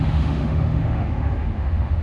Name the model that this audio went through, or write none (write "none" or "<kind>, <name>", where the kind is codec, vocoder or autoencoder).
autoencoder, DAC-VAE